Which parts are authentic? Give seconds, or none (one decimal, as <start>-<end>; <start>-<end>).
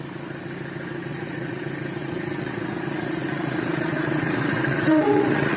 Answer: 0.0-1.1; 1.6-2.0